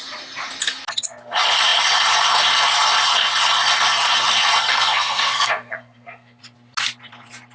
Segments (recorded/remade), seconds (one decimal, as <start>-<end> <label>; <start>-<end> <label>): 0.0-4.7 recorded; 4.7-6.4 remade; 6.4-7.5 recorded